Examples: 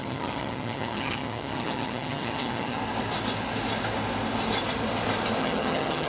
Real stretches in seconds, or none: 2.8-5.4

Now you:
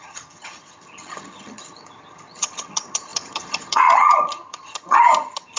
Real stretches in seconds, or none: none